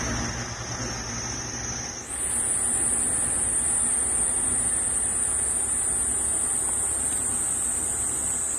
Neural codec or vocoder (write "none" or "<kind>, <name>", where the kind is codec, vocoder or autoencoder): none